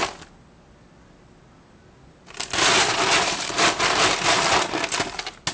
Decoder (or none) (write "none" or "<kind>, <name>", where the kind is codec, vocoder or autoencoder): none